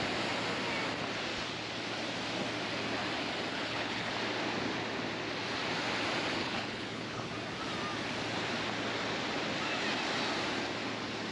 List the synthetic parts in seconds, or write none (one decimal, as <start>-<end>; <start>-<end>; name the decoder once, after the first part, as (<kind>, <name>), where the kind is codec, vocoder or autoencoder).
3.5-4.1 (codec, HILCodec); 6.4-7.3